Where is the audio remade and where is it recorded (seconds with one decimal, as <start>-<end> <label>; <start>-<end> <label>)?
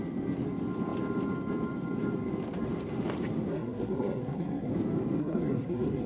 0.0-3.5 recorded; 3.5-4.7 remade; 4.7-5.2 recorded; 5.2-6.1 remade